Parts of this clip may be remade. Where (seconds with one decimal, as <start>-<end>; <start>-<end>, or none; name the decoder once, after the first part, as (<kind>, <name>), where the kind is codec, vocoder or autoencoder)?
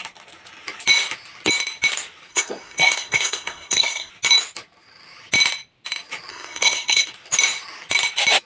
2.3-4.1 (codec, SNAC); 6.3-7.1